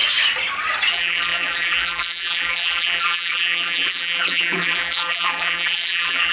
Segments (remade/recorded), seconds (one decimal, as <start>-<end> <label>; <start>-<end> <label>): 0.0-0.9 recorded; 0.9-6.3 remade